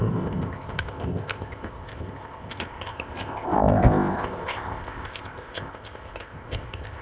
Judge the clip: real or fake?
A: fake